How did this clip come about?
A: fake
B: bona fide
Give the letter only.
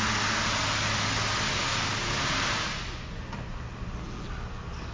B